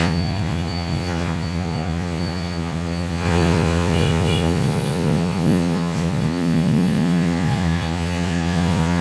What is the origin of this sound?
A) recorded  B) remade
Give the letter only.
B